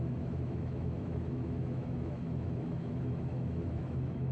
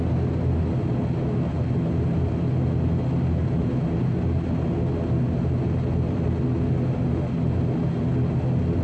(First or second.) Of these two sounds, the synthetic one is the first